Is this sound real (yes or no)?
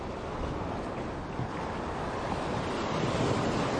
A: yes